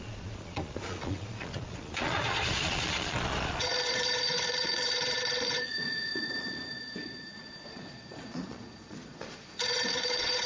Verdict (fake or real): fake